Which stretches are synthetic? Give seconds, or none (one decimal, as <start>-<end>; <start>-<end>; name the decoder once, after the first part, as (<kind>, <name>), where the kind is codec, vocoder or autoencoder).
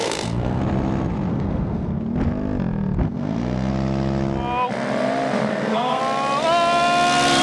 0.0-0.6 (codec, SNAC); 1.3-2.0; 3.0-3.7; 5.5-6.0